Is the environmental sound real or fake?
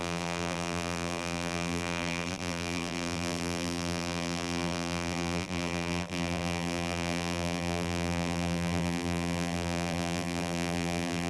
fake